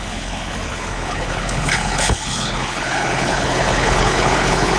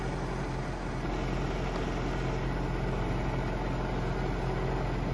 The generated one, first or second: first